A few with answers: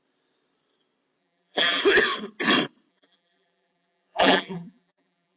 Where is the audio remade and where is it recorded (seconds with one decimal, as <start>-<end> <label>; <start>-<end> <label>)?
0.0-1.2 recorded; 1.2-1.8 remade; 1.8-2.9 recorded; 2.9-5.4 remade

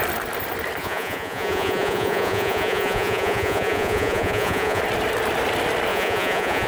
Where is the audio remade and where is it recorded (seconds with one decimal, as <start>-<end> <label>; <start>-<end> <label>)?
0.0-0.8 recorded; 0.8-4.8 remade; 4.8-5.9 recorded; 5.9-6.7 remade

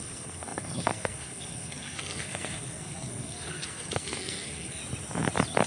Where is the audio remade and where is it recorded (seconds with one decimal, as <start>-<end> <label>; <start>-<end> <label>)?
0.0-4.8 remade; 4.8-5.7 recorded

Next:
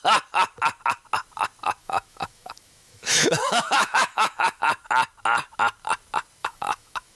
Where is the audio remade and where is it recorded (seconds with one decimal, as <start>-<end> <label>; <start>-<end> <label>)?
0.0-1.8 recorded; 1.8-4.6 remade; 4.6-6.4 recorded; 6.4-7.2 remade

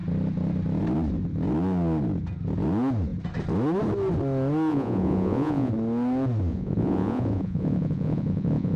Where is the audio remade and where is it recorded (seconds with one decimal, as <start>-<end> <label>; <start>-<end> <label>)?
0.0-4.7 recorded; 4.7-5.7 remade; 5.7-6.5 recorded; 6.5-8.8 remade